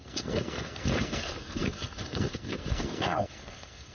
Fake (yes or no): yes